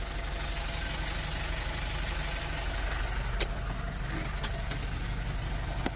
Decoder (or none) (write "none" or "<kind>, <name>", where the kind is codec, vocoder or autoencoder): none